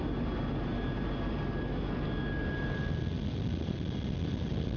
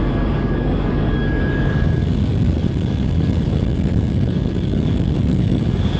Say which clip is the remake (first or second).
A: second